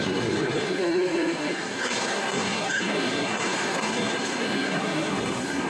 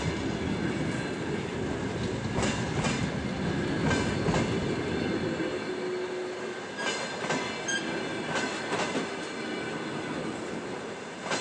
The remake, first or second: first